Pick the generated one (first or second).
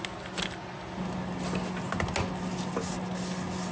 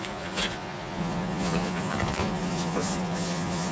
second